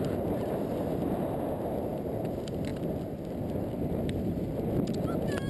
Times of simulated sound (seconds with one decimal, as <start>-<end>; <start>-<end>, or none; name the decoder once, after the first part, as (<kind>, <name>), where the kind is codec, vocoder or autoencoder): none